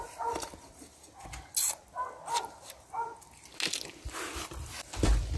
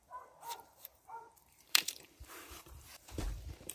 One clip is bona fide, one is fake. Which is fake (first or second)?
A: second